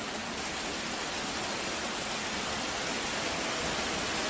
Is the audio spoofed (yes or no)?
no